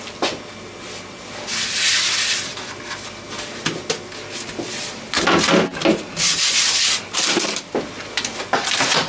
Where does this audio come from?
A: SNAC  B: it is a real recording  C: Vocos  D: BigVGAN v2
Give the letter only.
B